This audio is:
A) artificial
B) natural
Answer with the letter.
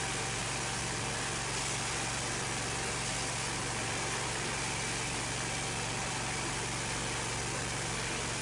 B